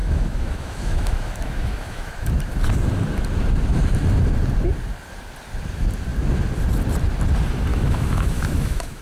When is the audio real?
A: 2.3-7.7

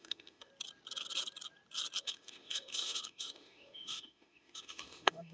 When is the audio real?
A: 0.5-2.0

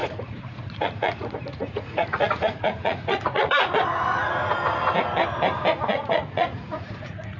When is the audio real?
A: 3.7-5.9

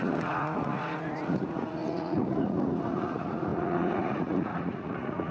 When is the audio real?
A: none

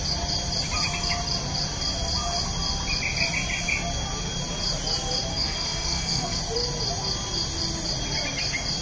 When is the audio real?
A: 0.0-5.3; 6.4-8.8

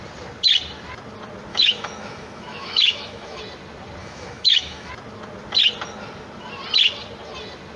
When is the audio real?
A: 0.0-1.5; 3.4-4.0; 4.9-7.8

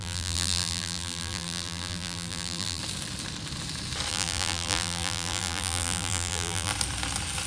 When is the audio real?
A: 2.8-4.1; 6.7-7.5